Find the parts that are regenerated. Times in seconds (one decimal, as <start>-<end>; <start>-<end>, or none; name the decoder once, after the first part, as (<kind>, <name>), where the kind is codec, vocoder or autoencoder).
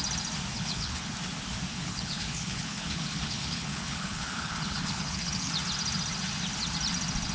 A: 0.5-1.1 (codec, HILCodec); 1.7-5.5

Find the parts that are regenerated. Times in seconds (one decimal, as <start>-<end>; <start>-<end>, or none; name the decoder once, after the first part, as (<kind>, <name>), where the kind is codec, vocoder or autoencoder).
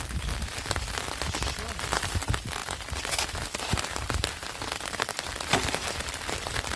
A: none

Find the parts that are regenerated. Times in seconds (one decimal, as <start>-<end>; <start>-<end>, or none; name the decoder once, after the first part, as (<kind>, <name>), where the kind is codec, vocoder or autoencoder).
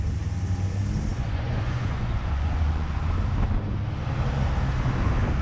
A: 1.1-3.0 (vocoder, Vocos)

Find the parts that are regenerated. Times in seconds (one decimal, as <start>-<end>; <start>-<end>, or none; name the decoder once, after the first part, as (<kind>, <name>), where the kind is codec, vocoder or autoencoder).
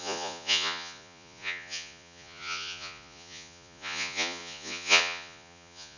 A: 0.0-6.0 (vocoder, Vocos)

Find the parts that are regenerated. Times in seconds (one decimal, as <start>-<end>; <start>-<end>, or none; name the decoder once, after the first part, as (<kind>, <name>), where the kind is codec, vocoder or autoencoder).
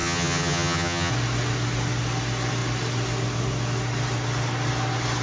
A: 0.0-1.1 (vocoder, HiFi-GAN)